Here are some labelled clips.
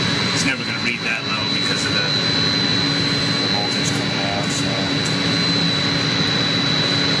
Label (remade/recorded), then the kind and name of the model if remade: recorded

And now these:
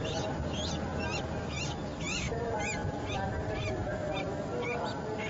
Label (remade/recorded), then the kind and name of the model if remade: recorded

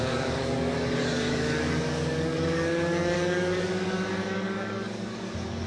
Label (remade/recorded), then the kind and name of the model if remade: remade, codec, DAC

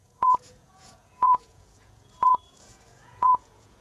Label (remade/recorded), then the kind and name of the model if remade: remade, vocoder, Vocos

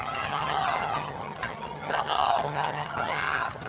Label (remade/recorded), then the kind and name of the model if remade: remade, vocoder, HiFi-GAN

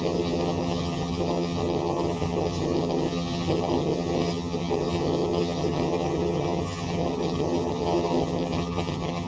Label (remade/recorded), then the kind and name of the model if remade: remade, vocoder, HiFi-GAN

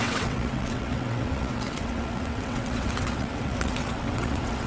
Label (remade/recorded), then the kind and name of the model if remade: remade, vocoder, WaveNeXt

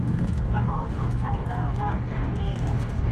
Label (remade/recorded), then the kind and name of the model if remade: remade, codec, DAC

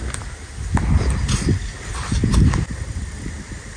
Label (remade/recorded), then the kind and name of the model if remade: recorded